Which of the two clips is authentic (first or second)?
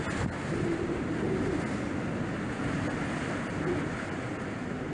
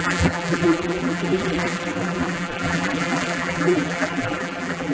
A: first